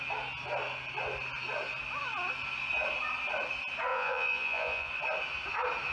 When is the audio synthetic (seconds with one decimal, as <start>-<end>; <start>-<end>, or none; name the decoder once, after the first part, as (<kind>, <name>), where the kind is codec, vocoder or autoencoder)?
3.9-4.9 (vocoder, Vocos)